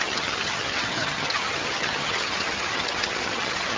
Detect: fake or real fake